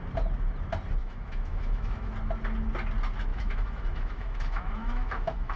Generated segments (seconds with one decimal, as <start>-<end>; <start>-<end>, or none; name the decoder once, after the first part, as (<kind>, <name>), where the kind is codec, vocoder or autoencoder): 1.0-2.1 (autoencoder, DAC-VAE); 3.3-5.6